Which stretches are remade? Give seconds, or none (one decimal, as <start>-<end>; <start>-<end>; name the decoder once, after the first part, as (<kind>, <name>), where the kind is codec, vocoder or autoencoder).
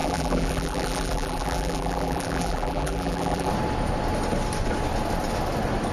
0.0-3.5 (vocoder, BigVGAN v2)